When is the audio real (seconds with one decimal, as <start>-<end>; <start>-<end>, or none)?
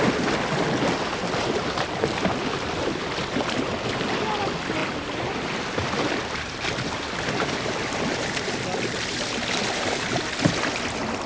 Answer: 0.0-4.8; 6.1-11.3